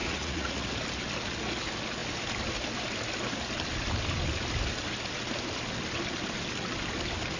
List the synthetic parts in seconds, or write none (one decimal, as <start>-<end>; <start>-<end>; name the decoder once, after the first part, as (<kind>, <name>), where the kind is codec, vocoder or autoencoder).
0.0-0.7 (vocoder, Vocos)